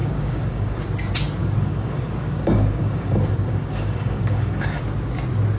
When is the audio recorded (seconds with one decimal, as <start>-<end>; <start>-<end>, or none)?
0.8-1.4; 4.8-5.6

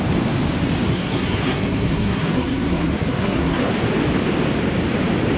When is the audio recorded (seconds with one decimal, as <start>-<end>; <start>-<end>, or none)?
0.0-0.9; 3.7-5.4

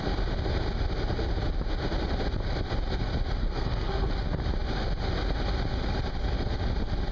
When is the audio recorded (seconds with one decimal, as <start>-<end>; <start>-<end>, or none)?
0.0-3.4; 4.1-7.1

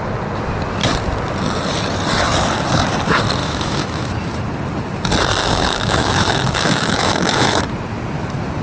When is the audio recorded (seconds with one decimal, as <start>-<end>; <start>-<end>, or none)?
0.0-3.4; 4.1-5.4; 7.6-8.6

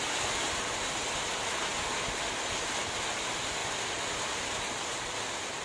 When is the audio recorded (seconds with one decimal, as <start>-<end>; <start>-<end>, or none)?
0.0-5.6

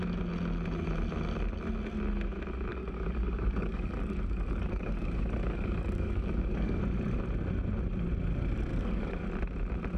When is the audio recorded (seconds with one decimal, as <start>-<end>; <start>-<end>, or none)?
0.0-2.7; 6.8-8.7; 9.3-10.0

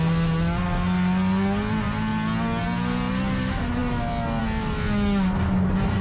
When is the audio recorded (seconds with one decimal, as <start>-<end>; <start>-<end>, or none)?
0.0-6.0